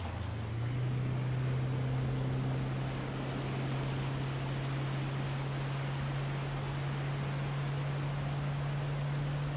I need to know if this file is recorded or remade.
recorded